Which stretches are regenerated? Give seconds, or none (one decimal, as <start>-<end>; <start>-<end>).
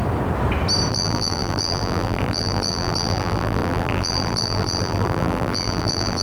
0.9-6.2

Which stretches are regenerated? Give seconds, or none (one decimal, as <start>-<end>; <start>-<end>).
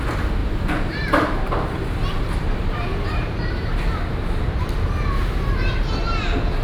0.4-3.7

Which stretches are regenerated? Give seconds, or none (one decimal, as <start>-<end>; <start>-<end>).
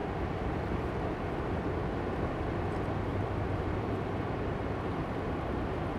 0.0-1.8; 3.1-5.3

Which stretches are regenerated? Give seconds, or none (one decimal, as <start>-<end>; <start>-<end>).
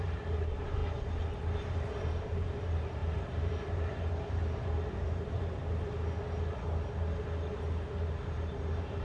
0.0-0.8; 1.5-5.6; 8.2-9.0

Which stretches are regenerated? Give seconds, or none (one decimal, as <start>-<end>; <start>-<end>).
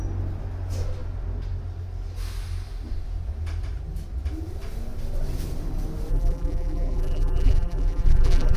6.1-8.6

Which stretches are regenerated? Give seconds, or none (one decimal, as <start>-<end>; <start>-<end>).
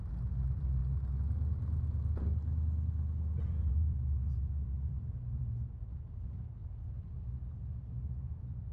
0.0-0.8; 3.4-8.7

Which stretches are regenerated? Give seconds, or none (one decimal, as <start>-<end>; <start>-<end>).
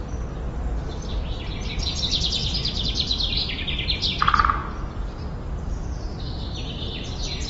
none